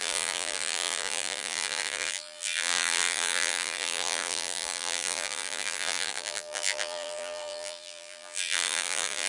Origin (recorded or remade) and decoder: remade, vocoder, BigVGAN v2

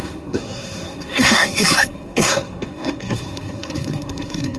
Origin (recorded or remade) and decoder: remade, codec, SNAC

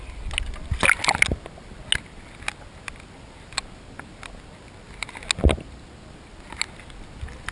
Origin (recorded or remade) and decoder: recorded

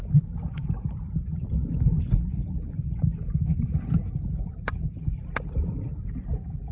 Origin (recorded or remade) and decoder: recorded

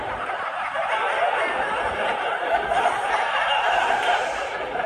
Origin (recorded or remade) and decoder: recorded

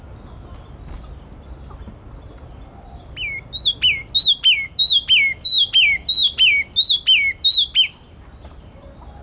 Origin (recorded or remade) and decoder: recorded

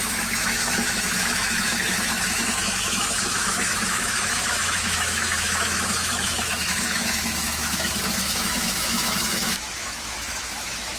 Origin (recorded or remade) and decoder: remade, autoencoder, DAC-VAE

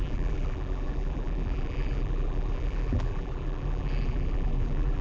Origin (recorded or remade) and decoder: remade, vocoder, BigVGAN v2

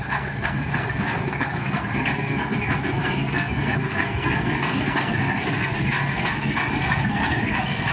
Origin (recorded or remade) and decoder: remade, codec, SNAC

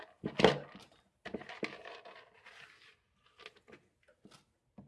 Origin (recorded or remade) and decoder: recorded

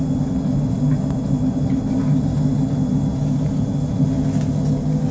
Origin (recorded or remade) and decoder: recorded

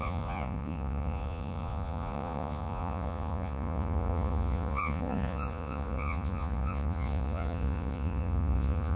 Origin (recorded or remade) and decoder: remade, vocoder, Vocos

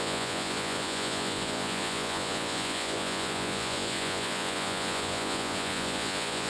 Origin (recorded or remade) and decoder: remade, vocoder, Vocos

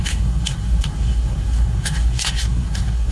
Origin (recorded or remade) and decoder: remade, codec, SNAC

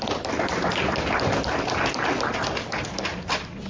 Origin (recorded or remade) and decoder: recorded